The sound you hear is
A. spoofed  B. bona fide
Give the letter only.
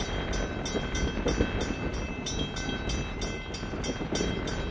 B